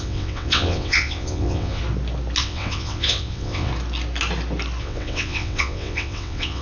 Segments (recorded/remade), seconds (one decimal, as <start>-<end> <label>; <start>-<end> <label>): 0.0-1.8 remade; 1.8-2.4 recorded; 2.4-3.7 remade; 3.7-4.8 recorded; 4.8-6.6 remade